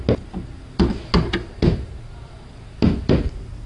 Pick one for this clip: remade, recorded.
recorded